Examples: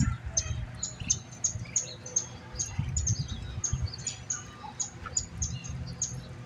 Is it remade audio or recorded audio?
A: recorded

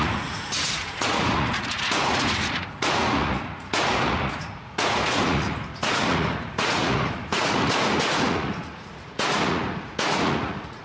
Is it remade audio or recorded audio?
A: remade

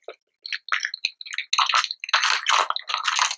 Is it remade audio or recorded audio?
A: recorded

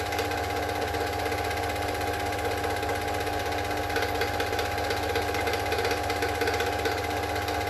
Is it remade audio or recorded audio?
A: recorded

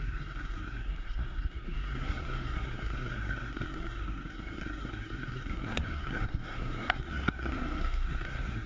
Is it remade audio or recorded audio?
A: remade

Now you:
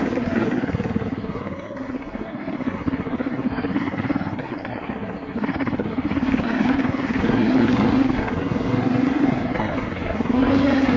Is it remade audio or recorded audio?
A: remade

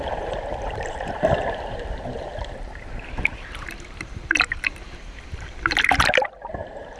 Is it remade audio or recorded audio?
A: remade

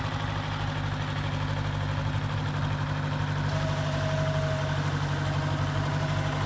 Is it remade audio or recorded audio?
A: recorded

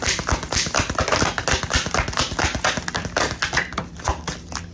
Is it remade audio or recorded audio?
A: recorded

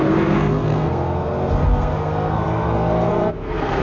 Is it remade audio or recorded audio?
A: remade